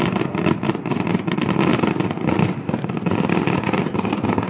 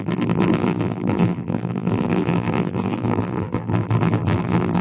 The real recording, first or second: first